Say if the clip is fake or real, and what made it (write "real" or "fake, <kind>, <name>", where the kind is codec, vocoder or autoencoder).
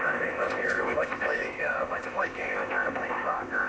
fake, codec, ZipCodec